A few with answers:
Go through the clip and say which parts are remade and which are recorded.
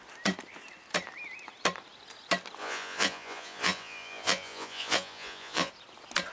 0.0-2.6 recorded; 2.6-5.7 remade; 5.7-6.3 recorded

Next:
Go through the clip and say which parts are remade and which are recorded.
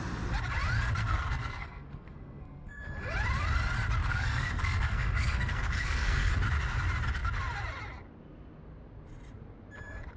0.0-1.0 recorded; 1.0-2.9 remade; 2.9-4.0 recorded; 4.0-6.3 remade; 6.3-10.2 recorded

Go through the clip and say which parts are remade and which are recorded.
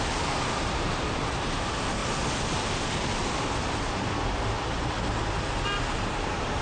0.0-2.0 remade; 2.0-6.0 recorded; 6.0-6.6 remade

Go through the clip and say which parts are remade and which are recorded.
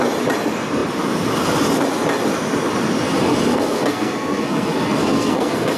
0.0-3.5 recorded; 3.5-5.8 remade